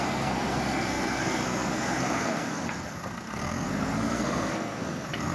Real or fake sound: fake